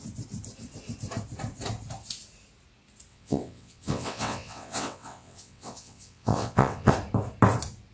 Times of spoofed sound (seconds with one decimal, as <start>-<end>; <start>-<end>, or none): 3.1-6.9